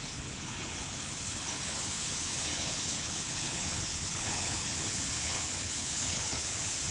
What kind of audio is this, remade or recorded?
remade